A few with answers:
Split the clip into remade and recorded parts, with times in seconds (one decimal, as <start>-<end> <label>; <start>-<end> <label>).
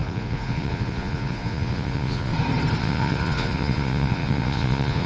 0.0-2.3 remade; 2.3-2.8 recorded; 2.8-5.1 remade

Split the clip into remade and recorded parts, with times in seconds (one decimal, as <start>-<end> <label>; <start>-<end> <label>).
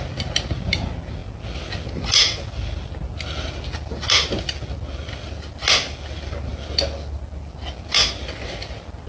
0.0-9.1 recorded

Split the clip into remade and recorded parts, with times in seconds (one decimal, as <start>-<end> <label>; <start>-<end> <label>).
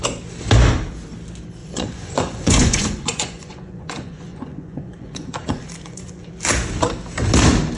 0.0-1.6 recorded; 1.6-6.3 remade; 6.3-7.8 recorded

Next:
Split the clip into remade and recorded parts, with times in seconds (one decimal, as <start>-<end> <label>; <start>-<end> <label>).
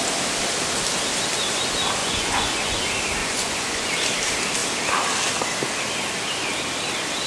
0.0-2.0 recorded; 2.0-2.8 remade; 2.8-3.2 recorded; 3.2-3.9 remade; 3.9-7.3 recorded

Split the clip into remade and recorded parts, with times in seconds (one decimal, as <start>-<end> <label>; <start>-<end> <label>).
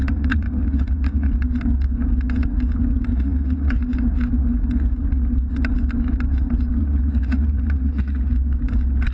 0.0-1.3 remade; 1.3-3.1 recorded; 3.1-3.7 remade; 3.7-6.8 recorded; 6.8-8.3 remade; 8.3-9.1 recorded